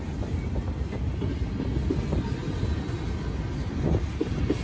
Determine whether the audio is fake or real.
real